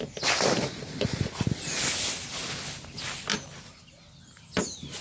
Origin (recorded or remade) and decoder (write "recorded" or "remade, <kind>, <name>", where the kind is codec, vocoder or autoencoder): recorded